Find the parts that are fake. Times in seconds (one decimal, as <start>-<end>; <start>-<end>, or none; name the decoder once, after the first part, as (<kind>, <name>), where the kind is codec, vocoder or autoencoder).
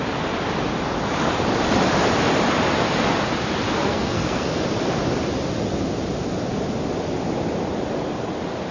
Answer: 3.8-4.5 (codec, SNAC)